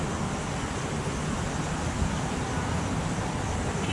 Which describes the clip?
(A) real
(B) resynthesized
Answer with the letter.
A